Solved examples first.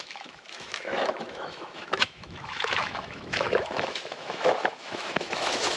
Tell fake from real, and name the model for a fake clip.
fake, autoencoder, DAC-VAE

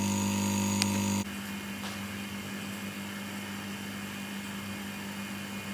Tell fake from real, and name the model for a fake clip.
real